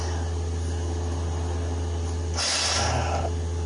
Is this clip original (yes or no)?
yes